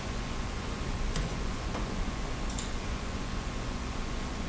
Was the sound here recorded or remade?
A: remade